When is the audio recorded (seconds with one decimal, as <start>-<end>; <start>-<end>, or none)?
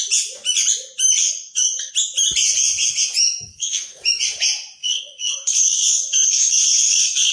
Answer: 0.0-1.2; 1.9-3.5; 4.0-4.8